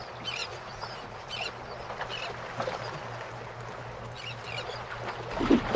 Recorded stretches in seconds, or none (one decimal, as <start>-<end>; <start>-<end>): 0.0-0.4; 1.3-5.8